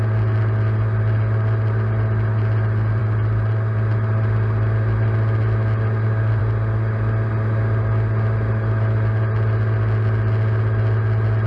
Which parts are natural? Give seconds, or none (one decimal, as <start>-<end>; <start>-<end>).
0.0-11.5